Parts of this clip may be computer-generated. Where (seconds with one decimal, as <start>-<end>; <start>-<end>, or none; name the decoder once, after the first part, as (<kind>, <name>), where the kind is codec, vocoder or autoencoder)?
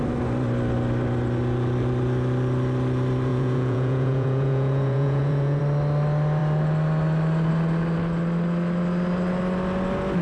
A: 3.3-5.6 (vocoder, Vocos)